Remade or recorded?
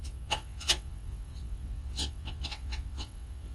remade